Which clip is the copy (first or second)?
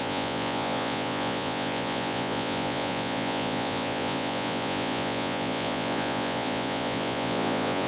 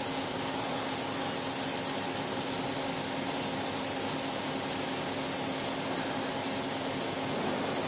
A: first